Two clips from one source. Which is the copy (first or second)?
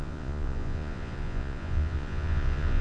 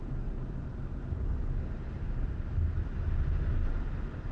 first